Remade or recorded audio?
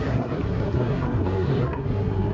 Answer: remade